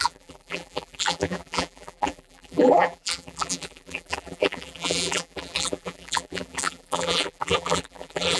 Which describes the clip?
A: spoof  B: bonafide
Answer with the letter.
A